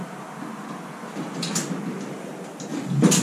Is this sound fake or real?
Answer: real